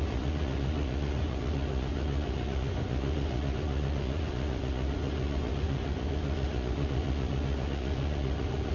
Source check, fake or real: fake